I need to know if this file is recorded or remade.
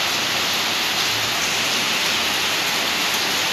recorded